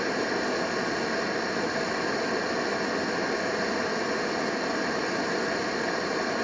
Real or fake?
real